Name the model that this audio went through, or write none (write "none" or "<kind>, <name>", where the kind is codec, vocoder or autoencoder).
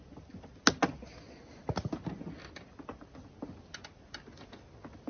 none